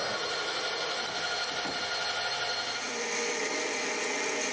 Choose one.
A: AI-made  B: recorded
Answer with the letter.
B